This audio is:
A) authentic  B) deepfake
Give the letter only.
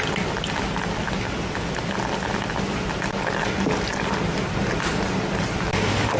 A